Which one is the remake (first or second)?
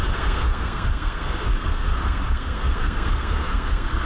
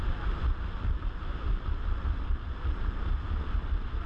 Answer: first